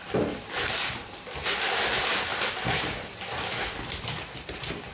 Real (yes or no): yes